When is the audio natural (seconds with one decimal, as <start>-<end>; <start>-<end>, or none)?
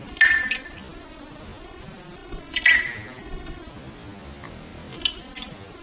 0.0-5.8